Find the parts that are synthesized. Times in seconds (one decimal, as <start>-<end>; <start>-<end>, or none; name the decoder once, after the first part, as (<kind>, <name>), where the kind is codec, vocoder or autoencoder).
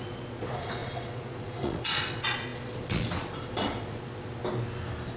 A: 0.0-4.4 (vocoder, Vocos)